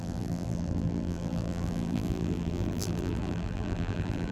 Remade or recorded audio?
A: remade